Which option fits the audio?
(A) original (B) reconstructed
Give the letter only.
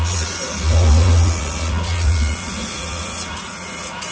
B